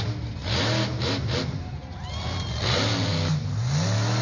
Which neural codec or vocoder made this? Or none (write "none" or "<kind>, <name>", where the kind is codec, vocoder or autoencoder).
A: none